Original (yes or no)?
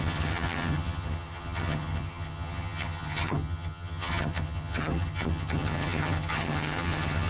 no